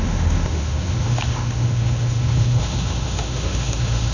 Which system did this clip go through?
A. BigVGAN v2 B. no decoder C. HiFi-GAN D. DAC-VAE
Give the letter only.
D